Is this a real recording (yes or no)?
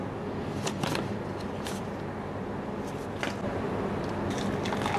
yes